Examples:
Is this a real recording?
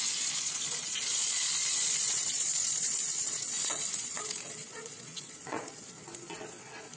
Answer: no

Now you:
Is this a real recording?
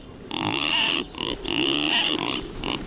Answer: no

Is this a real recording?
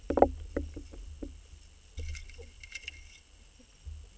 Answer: yes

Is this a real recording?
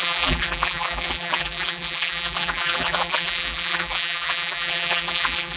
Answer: no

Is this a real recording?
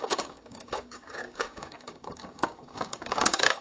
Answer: no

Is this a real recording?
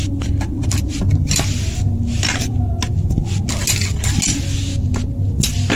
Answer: yes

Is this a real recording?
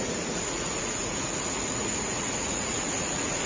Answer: no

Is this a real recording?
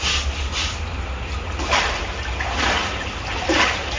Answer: yes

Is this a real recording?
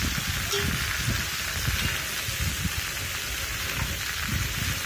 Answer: yes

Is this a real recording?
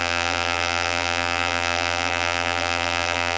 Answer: no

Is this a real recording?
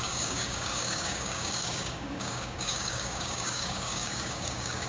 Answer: no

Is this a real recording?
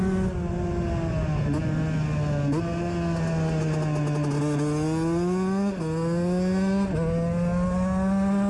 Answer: yes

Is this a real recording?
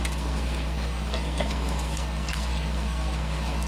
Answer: no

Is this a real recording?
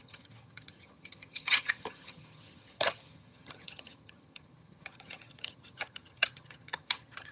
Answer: no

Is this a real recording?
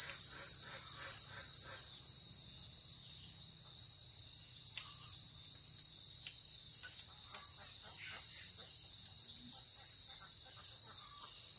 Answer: yes